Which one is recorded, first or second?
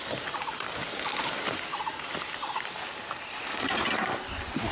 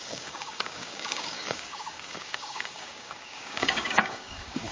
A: first